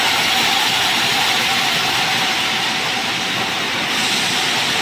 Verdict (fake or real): real